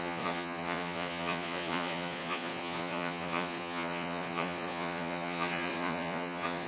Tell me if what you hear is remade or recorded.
remade